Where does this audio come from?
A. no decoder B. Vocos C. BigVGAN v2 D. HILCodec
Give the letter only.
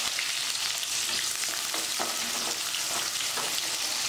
A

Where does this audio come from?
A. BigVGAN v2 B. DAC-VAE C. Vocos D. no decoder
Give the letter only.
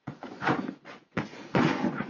C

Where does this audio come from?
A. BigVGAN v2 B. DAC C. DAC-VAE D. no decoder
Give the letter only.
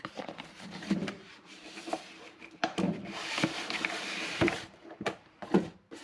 A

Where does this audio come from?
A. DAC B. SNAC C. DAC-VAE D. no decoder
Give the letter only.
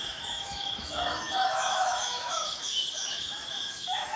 C